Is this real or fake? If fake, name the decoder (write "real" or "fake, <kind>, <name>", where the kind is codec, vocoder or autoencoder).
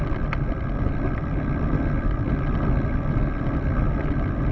real